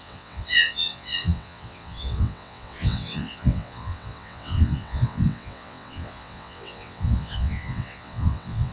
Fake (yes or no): yes